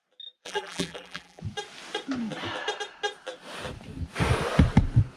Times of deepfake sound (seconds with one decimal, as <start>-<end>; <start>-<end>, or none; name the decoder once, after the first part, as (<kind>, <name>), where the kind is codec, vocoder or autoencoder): 0.4-1.4 (vocoder, BigVGAN v2)